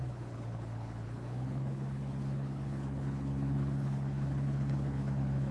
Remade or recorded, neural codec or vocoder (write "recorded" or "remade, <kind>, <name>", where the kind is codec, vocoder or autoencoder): remade, codec, HILCodec